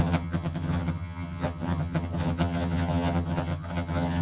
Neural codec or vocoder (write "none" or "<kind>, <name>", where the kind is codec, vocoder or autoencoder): vocoder, HiFi-GAN